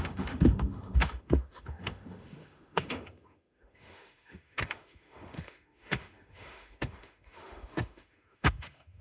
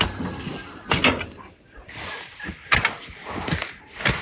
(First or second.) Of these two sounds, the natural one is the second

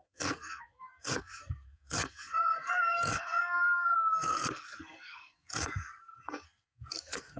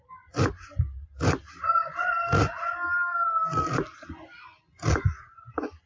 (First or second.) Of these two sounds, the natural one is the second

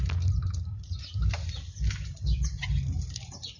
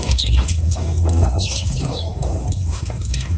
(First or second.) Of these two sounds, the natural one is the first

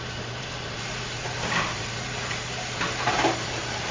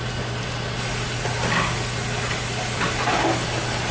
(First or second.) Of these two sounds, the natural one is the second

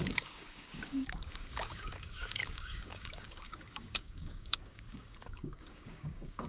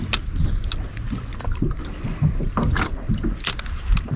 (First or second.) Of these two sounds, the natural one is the second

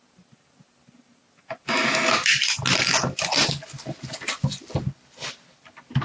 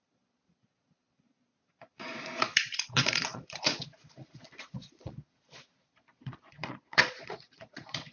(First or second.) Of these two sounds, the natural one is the first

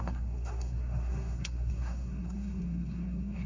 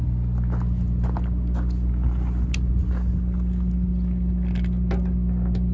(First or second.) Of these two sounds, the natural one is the second